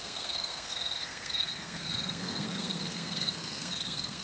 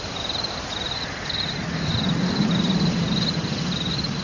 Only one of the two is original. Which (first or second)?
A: second